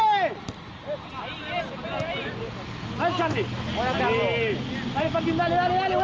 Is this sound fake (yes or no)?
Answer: no